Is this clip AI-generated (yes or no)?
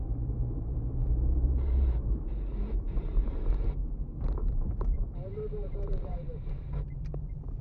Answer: yes